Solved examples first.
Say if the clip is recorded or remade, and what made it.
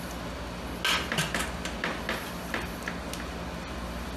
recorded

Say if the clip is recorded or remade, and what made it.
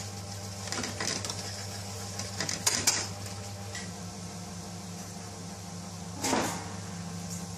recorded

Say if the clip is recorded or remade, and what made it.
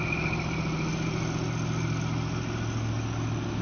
recorded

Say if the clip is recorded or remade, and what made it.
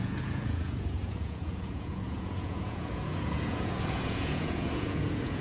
remade, vocoder, Vocos